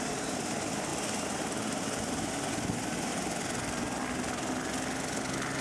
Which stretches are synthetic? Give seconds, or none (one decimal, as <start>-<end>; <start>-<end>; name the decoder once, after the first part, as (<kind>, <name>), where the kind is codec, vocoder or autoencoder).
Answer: none